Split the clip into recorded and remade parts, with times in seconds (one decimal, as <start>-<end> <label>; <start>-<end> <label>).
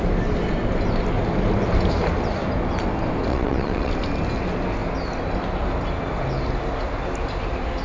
0.0-3.3 recorded; 3.3-3.9 remade; 3.9-7.8 recorded